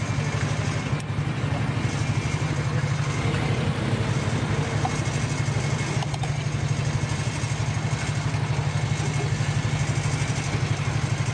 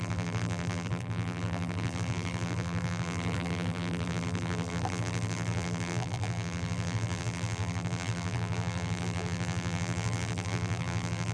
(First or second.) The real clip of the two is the first